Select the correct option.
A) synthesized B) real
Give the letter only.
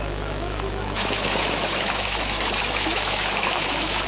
A